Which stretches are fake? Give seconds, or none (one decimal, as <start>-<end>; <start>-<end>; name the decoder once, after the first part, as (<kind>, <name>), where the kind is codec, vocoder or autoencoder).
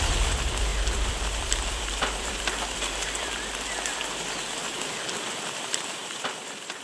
0.7-4.8 (vocoder, BigVGAN v2); 6.0-6.8